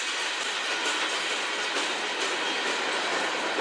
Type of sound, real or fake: real